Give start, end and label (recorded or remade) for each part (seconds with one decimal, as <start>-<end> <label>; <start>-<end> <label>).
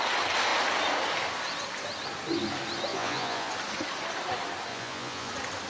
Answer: 0.0-2.9 recorded; 2.9-3.5 remade; 3.5-4.7 recorded; 4.7-5.3 remade; 5.3-5.7 recorded